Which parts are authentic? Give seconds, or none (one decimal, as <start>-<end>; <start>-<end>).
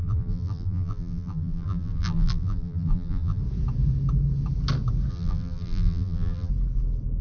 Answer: 3.4-5.1; 6.5-7.2